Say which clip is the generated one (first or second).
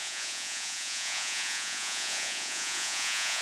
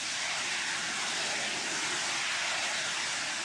first